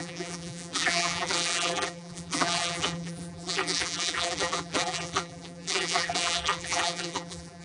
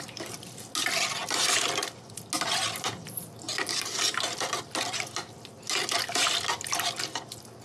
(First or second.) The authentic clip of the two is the second